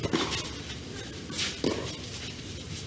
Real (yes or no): yes